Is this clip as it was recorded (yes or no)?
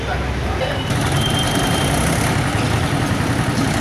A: yes